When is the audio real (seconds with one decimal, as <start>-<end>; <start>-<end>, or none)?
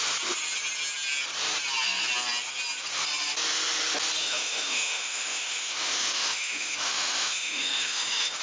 0.0-4.2